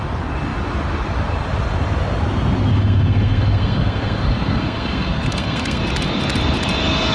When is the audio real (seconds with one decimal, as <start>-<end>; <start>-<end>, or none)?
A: 0.0-2.7; 5.8-7.1